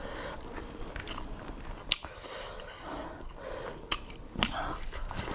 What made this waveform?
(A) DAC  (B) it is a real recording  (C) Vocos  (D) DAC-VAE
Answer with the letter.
B